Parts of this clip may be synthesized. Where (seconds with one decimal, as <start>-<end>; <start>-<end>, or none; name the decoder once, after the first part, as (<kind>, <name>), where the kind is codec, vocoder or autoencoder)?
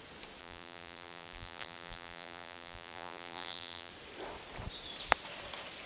0.4-3.9 (vocoder, BigVGAN v2)